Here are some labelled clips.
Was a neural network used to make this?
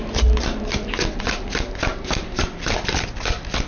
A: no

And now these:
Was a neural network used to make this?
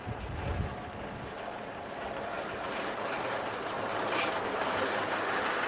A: yes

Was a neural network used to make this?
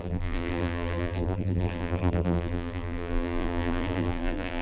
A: yes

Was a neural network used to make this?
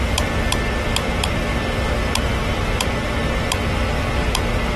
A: no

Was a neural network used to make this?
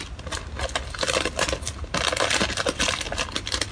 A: no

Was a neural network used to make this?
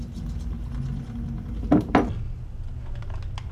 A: no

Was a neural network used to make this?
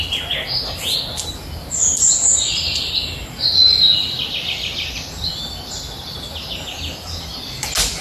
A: no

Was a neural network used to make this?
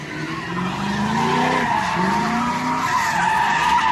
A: no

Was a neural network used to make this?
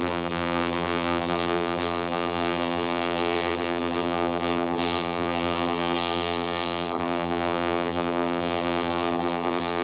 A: yes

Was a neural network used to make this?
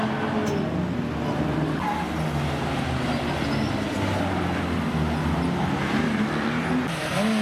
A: no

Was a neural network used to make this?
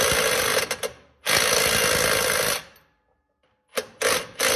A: no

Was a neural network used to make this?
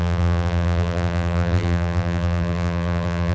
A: yes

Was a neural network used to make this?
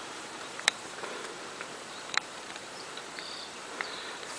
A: yes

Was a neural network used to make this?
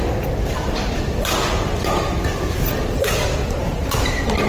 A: no